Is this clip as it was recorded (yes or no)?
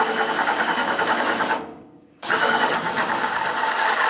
no